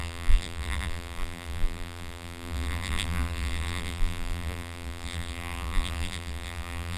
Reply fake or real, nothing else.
fake